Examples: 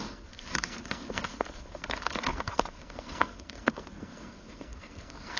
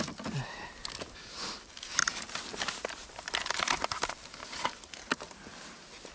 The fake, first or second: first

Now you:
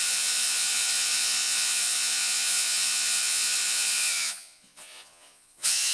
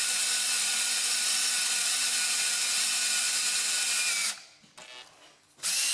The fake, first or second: first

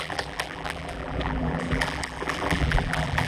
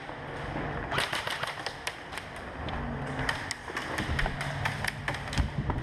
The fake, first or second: first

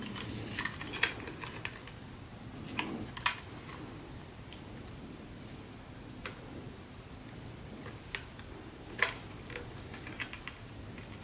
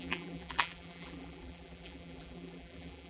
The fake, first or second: second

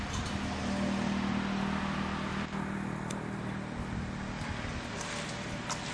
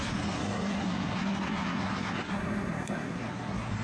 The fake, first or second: second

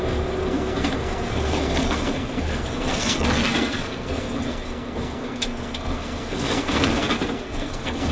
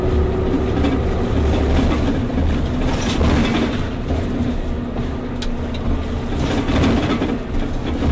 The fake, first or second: first